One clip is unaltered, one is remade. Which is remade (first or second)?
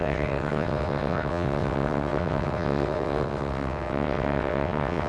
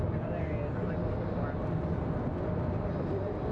first